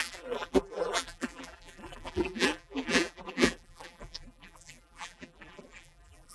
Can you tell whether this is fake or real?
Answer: fake